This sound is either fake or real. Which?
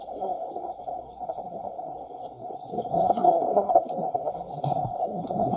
fake